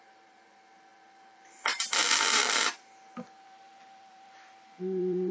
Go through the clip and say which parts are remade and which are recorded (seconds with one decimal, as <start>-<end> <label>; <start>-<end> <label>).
0.0-5.3 remade